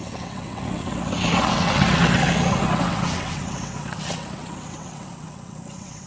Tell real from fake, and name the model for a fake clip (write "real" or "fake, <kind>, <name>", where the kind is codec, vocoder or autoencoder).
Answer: fake, vocoder, WaveNeXt